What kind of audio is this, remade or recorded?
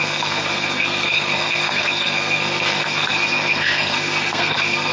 remade